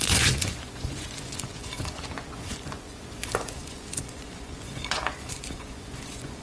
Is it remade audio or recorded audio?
remade